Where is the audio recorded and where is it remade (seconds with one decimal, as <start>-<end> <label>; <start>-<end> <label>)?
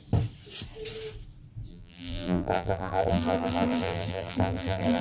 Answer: 0.0-1.7 recorded; 1.7-5.0 remade